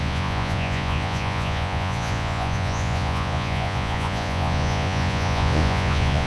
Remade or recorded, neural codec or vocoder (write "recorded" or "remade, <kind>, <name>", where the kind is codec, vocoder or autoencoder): remade, vocoder, Vocos